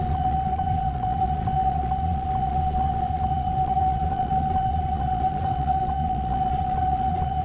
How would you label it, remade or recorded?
remade